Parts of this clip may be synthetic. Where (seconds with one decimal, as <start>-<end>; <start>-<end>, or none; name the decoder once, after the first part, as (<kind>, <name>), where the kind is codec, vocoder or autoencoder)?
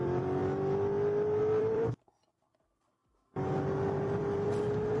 0.0-0.4 (vocoder, BigVGAN v2); 1.4-3.0; 3.7-5.0